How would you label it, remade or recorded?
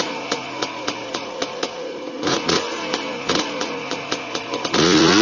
remade